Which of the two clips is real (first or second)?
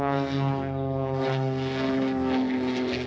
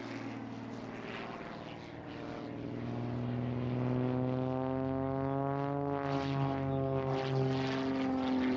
second